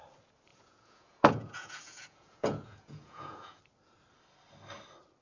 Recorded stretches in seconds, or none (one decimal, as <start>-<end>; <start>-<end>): 0.0-0.5; 3.6-5.2